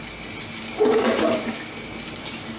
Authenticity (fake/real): real